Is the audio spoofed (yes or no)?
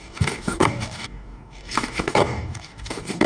yes